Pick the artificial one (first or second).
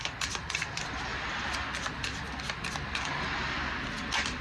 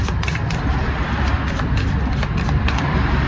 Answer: second